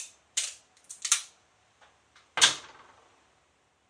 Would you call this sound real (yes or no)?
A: yes